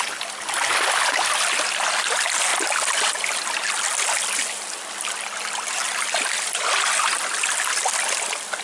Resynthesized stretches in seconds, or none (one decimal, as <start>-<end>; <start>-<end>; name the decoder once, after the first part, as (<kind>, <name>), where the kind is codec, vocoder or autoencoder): none